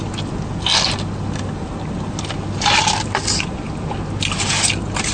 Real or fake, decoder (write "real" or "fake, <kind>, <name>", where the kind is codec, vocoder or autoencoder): real